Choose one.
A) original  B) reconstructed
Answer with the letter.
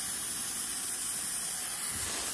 A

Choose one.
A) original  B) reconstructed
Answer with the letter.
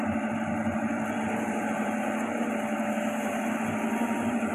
B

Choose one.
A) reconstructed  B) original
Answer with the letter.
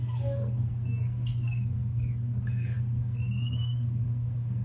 A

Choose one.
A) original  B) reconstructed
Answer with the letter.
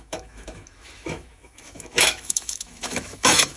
B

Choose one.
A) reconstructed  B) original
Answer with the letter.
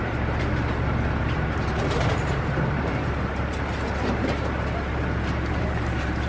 A